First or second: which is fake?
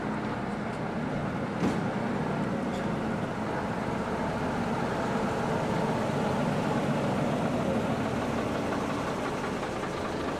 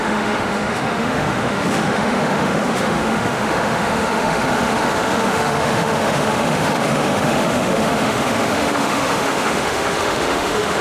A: second